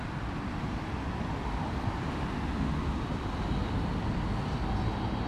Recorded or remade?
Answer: recorded